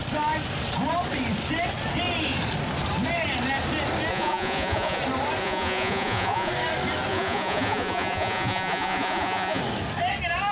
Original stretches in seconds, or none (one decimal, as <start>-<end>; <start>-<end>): 0.0-4.1; 5.0-5.4; 6.5-7.1; 9.6-10.5